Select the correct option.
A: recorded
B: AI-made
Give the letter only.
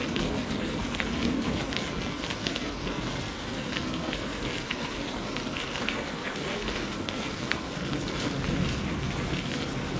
B